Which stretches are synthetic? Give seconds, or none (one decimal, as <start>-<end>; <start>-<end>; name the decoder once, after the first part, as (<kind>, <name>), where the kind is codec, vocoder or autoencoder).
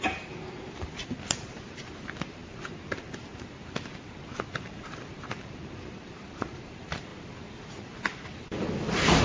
0.0-7.1 (vocoder, BigVGAN v2)